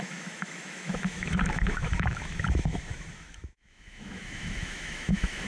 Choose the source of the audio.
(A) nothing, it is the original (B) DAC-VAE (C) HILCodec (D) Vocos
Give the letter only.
B